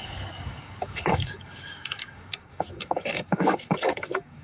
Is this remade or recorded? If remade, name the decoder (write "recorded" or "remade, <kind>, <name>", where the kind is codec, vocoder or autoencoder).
remade, codec, DAC